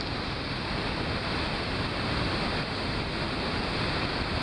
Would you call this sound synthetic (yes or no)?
no